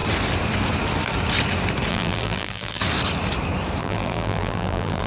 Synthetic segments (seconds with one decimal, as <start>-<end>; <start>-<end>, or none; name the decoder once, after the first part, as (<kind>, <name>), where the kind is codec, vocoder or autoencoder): 1.9-2.8 (vocoder, BigVGAN v2); 3.8-5.1